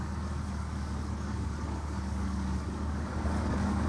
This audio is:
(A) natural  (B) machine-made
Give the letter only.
B